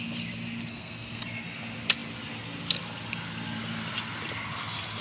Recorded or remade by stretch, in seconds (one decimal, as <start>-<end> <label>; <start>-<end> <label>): 0.0-0.7 recorded; 0.7-1.2 remade; 1.2-5.0 recorded

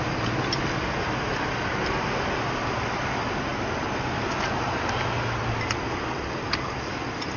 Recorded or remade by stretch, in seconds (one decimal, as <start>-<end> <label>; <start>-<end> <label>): 0.0-7.4 recorded

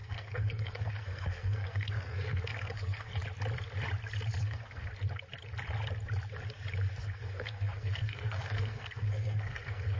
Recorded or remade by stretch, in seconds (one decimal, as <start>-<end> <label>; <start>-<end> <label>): 0.0-3.1 remade; 3.1-4.4 recorded; 4.4-4.9 remade; 4.9-7.0 recorded; 7.0-10.0 remade

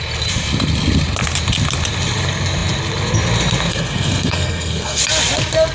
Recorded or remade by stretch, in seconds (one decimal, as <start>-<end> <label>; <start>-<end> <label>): 0.0-3.7 recorded; 3.7-5.0 remade; 5.0-5.7 recorded